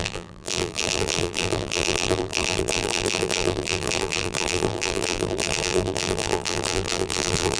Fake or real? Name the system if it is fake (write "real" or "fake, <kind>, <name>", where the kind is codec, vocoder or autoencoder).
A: fake, vocoder, BigVGAN v2